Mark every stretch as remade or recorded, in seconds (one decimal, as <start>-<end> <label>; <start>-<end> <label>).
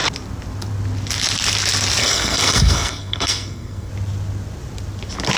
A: 0.0-2.0 recorded; 2.0-3.9 remade; 3.9-5.4 recorded